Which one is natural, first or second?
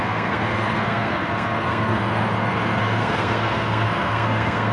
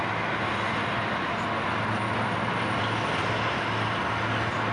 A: second